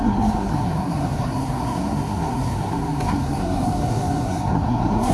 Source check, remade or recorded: remade